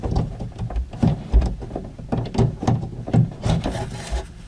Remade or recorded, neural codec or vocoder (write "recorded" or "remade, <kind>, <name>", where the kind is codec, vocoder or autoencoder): recorded